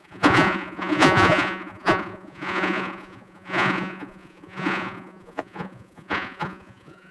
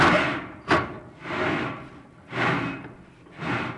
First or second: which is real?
second